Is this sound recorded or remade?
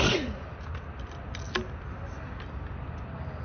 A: recorded